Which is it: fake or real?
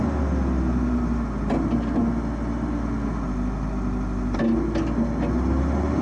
real